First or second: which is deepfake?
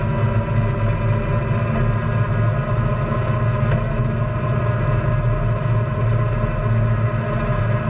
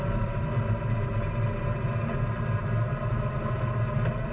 second